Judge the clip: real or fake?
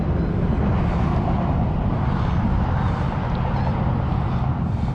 real